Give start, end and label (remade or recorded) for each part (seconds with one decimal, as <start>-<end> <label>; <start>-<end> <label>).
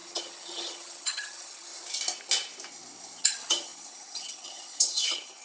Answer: 0.0-1.7 remade; 1.7-3.2 recorded; 3.2-5.4 remade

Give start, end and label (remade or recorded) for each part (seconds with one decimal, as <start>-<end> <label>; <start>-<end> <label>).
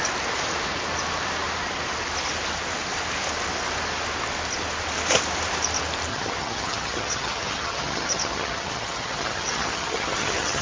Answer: 0.0-6.1 recorded; 6.1-10.6 remade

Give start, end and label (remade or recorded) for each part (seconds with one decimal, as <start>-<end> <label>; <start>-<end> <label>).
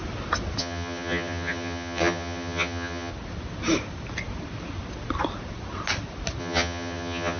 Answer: 0.0-0.6 recorded; 0.6-3.1 remade; 3.1-6.4 recorded; 6.4-7.4 remade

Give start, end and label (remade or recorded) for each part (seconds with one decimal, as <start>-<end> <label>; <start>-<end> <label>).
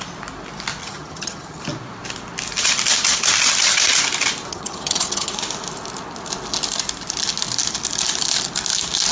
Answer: 0.0-0.8 recorded; 0.8-1.6 remade; 1.6-4.5 recorded; 4.5-5.3 remade; 5.3-9.1 recorded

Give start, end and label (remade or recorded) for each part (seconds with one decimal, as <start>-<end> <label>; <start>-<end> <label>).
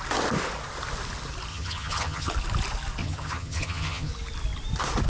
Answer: 0.0-1.5 recorded; 1.5-2.3 remade; 2.3-3.0 recorded; 3.0-4.1 remade; 4.1-5.1 recorded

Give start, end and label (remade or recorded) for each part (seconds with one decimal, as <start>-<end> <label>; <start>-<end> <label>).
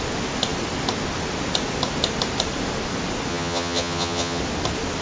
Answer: 0.0-3.3 recorded; 3.3-4.4 remade; 4.4-5.0 recorded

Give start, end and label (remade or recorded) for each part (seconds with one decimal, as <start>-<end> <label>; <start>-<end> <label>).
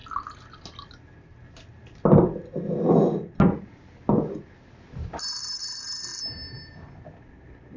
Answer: 0.0-7.8 recorded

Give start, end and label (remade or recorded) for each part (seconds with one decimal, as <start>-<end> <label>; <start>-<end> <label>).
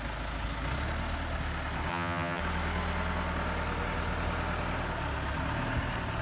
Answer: 0.0-1.9 recorded; 1.9-2.4 remade; 2.4-6.2 recorded